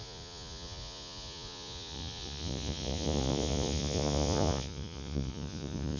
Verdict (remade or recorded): remade